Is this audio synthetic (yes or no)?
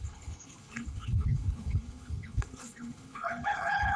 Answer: yes